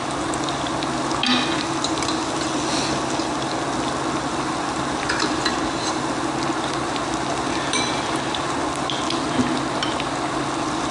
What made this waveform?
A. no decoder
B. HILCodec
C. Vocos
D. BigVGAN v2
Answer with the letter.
A